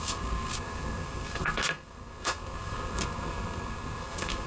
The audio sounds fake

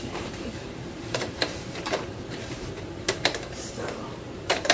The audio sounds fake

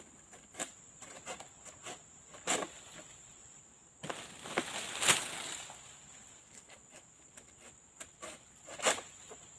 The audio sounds real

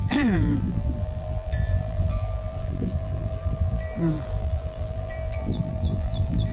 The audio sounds fake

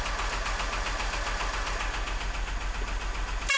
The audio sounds real